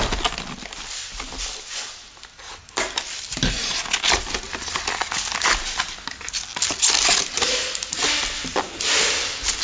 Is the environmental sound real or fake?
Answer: real